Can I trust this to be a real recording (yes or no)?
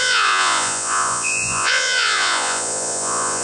no